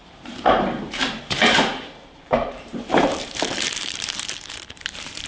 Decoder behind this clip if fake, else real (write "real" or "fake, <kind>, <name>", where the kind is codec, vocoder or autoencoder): fake, vocoder, BigVGAN v2